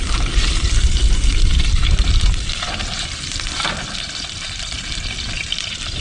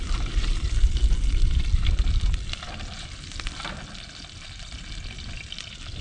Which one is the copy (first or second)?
first